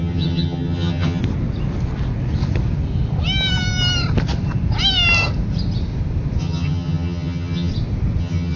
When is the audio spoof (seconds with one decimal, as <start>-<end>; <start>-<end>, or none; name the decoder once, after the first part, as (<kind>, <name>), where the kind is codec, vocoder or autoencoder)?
0.0-1.2 (vocoder, HiFi-GAN); 6.4-7.7; 8.2-8.6